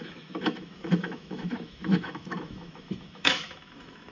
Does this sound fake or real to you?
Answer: fake